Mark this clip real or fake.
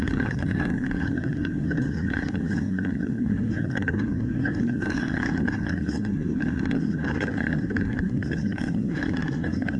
fake